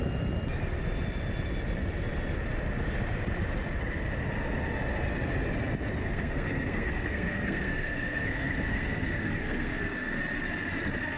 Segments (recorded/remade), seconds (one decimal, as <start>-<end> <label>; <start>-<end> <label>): 0.0-6.0 recorded; 6.0-10.2 remade; 10.2-11.2 recorded